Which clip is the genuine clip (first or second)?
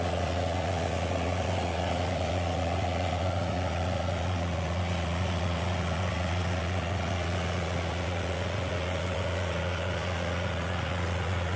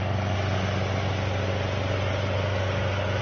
second